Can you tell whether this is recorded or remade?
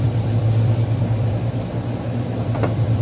remade